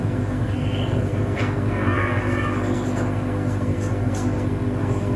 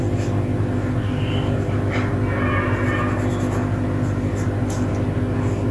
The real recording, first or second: second